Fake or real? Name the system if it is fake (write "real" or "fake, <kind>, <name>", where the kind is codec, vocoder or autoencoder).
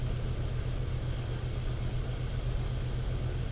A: real